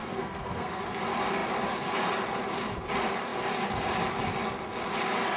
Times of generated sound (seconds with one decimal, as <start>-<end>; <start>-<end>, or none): 0.0-0.8